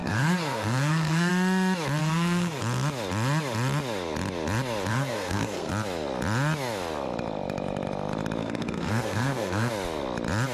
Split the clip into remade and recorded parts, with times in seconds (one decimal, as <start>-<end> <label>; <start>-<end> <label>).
0.0-1.3 remade; 1.3-2.0 recorded; 2.0-2.6 remade; 2.6-4.9 recorded; 4.9-5.7 remade; 5.7-8.4 recorded; 8.4-9.7 remade; 9.7-10.5 recorded